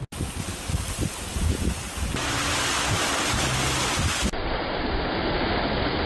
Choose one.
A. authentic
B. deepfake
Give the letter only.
A